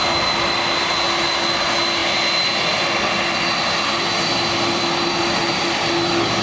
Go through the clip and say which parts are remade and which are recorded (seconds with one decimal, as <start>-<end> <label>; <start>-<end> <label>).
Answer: 0.0-6.4 recorded